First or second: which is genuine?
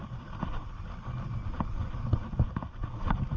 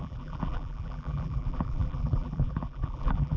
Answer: first